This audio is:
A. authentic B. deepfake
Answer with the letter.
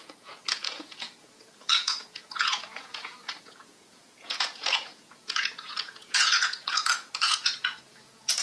B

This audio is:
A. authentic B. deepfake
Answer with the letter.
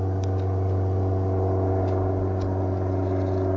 A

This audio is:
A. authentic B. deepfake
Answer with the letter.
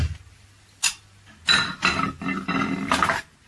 A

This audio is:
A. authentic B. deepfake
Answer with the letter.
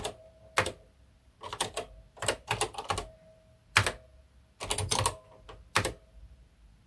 A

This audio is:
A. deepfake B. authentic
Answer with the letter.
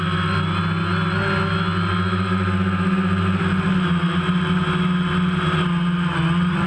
B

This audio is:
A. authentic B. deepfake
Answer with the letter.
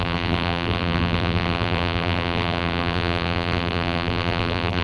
B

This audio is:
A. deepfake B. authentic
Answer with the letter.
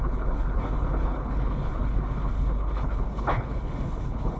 A